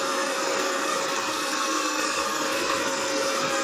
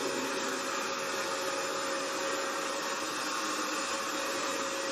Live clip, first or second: second